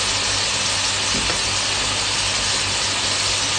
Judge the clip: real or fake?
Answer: real